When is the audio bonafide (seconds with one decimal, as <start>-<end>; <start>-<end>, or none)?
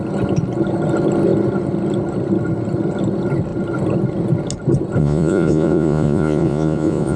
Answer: 0.0-5.0